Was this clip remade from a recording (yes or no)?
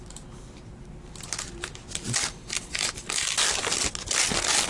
no